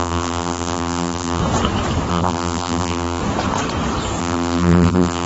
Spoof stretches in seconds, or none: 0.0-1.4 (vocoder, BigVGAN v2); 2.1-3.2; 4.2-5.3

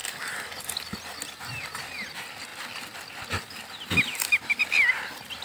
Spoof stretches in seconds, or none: none

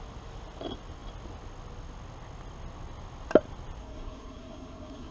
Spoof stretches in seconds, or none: 3.8-5.1 (codec, SNAC)